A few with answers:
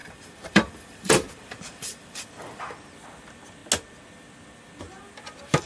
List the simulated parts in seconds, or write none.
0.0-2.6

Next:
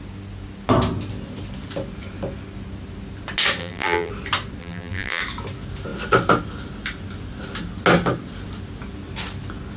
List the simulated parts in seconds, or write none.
3.6-4.1; 4.6-5.2